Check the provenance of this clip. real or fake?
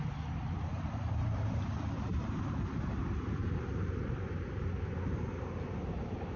fake